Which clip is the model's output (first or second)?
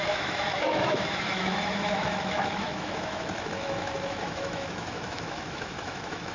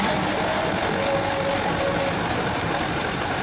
first